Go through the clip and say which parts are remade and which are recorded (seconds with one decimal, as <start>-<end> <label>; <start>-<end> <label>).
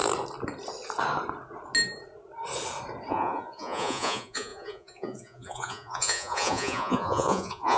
0.0-3.1 recorded; 3.1-7.8 remade